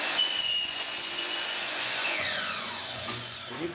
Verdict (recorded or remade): remade